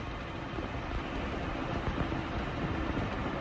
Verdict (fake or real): real